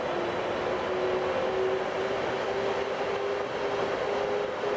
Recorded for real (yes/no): yes